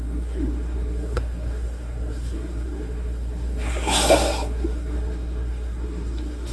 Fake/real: fake